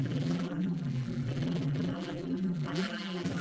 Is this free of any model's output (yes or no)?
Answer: no